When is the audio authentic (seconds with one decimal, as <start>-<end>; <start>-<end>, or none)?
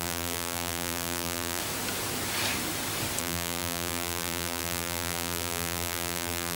1.6-3.2